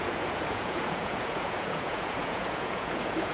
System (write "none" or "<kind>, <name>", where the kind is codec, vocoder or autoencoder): vocoder, Vocos